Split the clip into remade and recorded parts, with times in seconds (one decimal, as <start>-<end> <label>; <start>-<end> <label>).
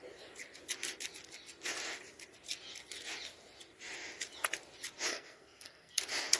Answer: 0.0-5.1 recorded; 5.1-6.0 remade; 6.0-6.4 recorded